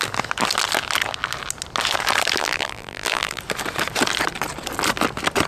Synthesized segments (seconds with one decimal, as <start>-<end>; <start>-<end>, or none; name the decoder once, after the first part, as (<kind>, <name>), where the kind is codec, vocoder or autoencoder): 2.4-3.4 (vocoder, BigVGAN v2)

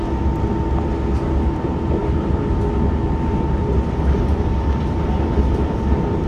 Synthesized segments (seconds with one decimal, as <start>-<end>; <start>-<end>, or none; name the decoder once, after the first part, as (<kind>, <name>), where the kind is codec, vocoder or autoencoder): none

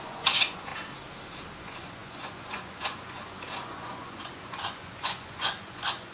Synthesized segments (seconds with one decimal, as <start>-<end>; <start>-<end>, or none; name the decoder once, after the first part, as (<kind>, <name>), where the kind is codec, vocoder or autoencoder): 0.0-0.7 (vocoder, Vocos); 1.6-6.1

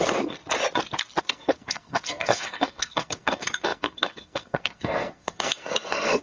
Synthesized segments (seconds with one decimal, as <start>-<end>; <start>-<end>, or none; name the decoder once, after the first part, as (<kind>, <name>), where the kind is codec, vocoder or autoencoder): 0.0-0.4 (codec, SNAC); 1.2-6.2

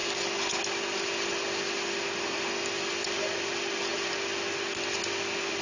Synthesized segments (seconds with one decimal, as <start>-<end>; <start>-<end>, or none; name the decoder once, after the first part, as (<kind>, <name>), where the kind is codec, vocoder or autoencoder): none

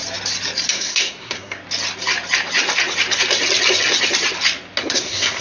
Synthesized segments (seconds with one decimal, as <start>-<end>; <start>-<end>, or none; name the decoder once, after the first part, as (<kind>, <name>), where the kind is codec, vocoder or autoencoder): 0.7-1.6 (codec, SNAC); 4.8-5.4